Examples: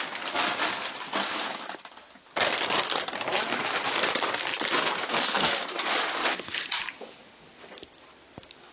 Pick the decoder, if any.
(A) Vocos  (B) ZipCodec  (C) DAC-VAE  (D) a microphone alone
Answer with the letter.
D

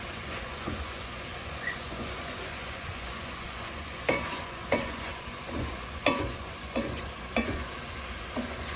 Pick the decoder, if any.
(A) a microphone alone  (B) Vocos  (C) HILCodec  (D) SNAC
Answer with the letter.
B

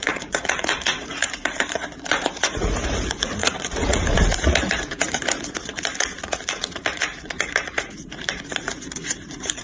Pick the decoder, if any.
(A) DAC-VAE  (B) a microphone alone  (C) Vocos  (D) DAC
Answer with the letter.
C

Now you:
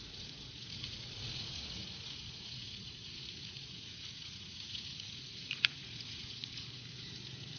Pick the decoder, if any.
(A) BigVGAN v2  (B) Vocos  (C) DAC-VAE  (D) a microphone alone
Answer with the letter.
B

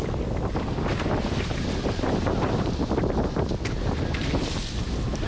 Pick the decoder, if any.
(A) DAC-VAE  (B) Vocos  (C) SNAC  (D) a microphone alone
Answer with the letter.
D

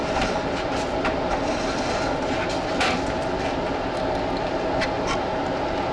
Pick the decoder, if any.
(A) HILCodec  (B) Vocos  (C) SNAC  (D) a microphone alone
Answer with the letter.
D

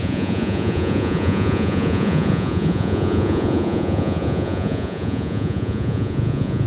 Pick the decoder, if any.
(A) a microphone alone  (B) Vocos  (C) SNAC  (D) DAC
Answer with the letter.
B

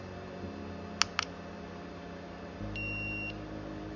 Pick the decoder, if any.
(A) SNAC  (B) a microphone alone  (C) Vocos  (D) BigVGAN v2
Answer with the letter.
B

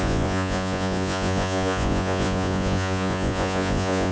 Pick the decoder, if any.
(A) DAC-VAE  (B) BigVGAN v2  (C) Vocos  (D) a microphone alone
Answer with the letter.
C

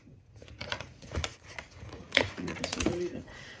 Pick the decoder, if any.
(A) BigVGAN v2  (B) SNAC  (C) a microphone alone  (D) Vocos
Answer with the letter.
D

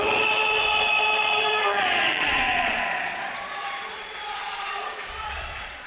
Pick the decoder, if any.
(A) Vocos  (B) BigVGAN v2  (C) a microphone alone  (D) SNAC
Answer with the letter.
A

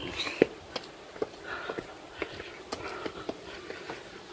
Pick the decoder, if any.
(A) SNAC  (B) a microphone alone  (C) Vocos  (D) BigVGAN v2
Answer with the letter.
B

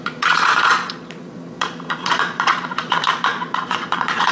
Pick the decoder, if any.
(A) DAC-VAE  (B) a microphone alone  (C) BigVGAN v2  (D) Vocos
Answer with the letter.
D